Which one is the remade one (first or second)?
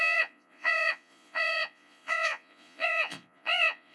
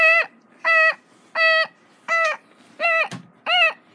first